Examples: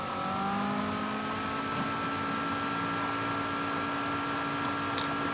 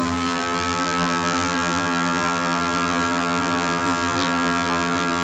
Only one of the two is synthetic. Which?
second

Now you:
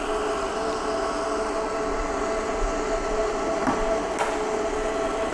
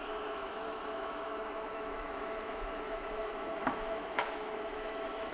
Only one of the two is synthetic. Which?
second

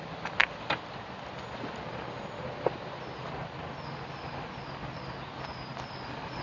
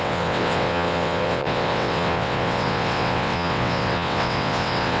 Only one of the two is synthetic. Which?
second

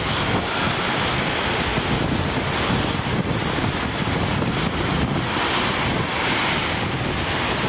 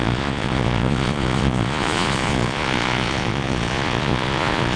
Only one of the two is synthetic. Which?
second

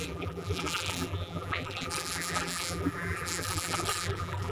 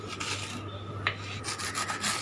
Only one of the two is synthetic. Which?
first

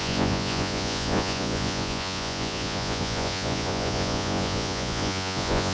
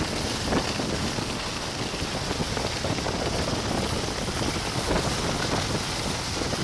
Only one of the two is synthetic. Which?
first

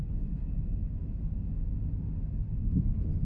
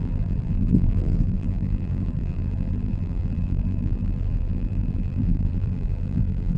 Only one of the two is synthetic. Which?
second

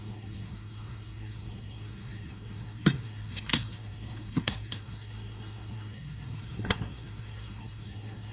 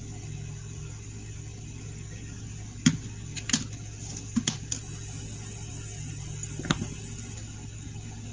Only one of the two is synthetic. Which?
first